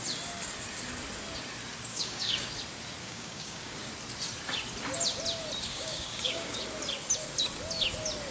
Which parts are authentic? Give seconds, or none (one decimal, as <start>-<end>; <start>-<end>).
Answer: 0.0-1.9; 2.5-3.0; 3.9-5.7; 6.6-8.3